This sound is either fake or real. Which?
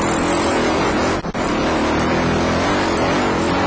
real